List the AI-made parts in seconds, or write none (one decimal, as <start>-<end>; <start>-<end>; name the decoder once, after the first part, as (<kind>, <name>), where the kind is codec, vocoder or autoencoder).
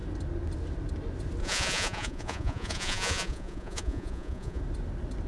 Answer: 1.4-4.6 (vocoder, Vocos)